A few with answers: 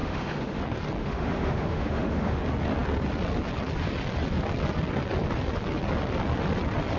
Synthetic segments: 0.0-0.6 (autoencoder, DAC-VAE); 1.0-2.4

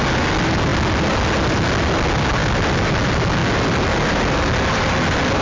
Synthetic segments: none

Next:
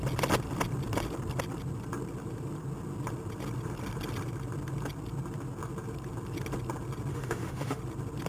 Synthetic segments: 7.1-7.8 (autoencoder, DAC-VAE)